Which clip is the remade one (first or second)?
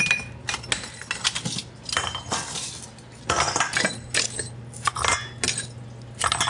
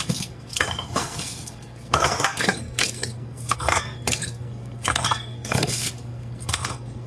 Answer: second